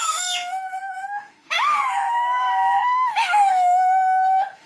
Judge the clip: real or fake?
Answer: fake